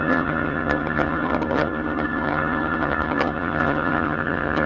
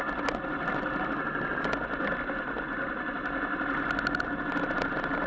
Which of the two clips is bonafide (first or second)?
second